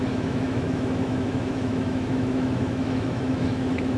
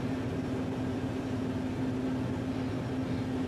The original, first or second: second